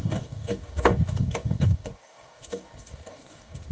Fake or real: fake